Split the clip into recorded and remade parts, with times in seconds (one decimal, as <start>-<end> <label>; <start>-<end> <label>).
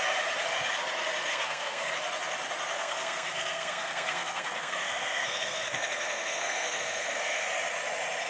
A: 0.0-1.3 recorded; 1.3-1.9 remade; 1.9-2.7 recorded; 2.7-7.4 remade; 7.4-8.3 recorded